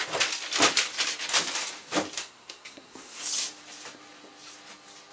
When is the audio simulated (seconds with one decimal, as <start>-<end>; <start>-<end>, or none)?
2.2-3.2